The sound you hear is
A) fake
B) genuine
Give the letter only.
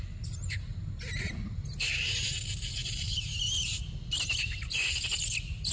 B